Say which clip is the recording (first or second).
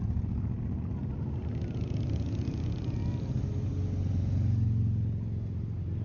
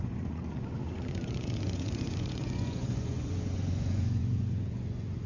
first